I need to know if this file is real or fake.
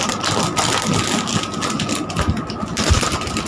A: real